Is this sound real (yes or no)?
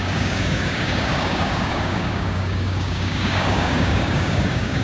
no